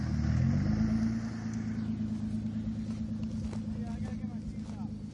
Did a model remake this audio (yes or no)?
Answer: no